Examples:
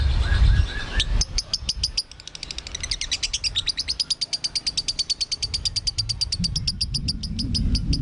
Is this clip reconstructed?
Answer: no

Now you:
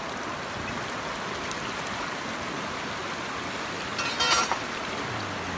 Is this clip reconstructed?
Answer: no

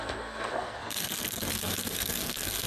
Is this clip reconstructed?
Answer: yes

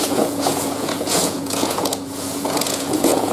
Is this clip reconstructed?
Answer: yes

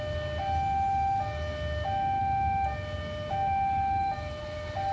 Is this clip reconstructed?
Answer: no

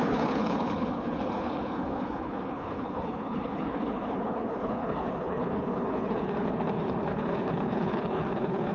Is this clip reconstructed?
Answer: yes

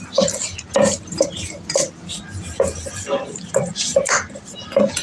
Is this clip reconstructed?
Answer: no